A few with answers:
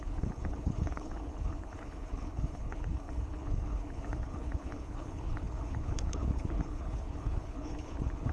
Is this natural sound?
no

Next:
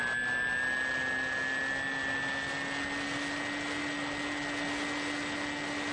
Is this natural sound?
yes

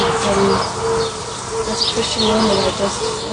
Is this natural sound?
yes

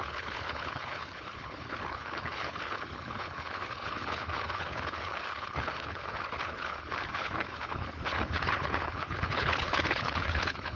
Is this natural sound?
no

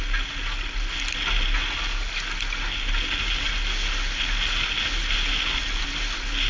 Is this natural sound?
yes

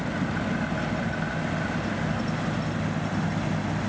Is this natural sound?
yes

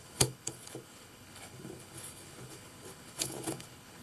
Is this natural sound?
no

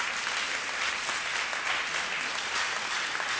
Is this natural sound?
yes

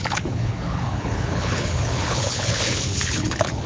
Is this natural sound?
no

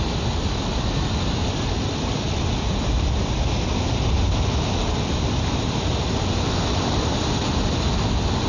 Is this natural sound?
yes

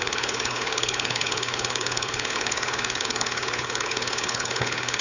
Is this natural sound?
no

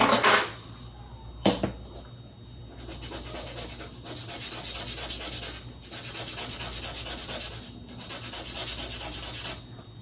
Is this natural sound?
yes